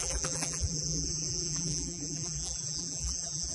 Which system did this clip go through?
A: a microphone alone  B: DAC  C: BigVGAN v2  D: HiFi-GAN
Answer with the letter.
C